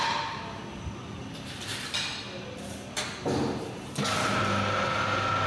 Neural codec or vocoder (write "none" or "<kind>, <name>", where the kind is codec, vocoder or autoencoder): none